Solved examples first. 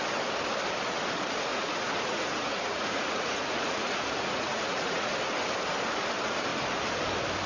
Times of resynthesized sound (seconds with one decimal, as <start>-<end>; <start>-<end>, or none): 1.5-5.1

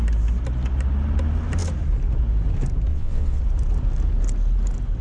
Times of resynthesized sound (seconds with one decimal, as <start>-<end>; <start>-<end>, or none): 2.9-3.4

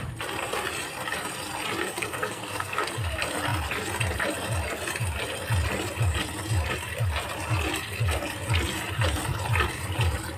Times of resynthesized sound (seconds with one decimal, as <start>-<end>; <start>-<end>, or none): 1.8-2.9

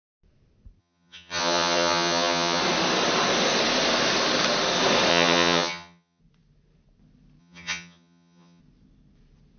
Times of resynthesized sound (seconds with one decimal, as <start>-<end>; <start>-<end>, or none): 0.8-2.6; 5.1-6.2; 7.4-8.6

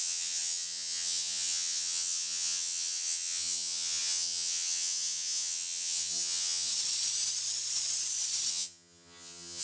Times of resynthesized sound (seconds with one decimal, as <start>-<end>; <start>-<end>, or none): 0.0-6.7; 8.5-9.6

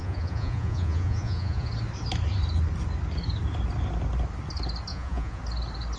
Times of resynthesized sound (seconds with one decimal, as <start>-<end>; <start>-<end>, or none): 0.0-1.7; 4.9-5.4

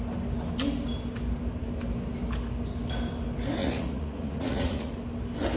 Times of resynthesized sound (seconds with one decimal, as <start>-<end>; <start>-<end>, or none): 3.6-4.9

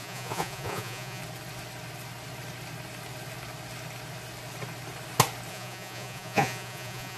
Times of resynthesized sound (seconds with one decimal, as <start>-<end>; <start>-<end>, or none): 0.0-1.2; 5.5-7.2